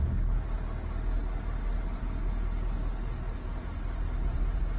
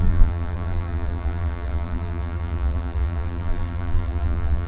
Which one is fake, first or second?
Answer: second